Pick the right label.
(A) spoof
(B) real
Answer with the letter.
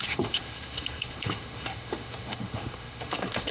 A